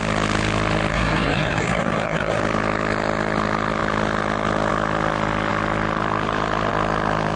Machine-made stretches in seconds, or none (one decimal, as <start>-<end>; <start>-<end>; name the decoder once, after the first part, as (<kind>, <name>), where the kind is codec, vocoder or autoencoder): 0.9-2.4 (codec, SNAC)